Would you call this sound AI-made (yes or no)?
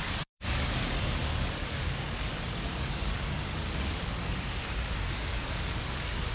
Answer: yes